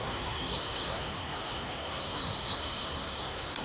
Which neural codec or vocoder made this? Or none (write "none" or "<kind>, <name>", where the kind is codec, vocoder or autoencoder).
codec, SNAC